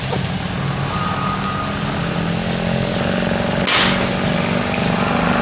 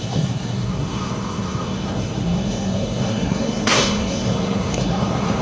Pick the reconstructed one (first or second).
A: second